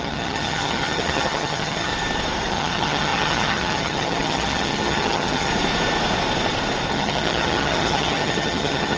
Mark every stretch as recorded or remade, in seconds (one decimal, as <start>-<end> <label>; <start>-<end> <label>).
0.0-1.9 remade; 1.9-2.5 recorded; 2.5-5.5 remade; 5.5-6.9 recorded; 6.9-9.0 remade